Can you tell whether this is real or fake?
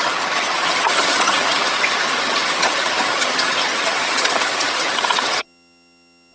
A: fake